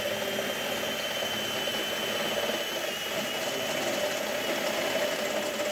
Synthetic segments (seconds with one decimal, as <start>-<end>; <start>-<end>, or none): none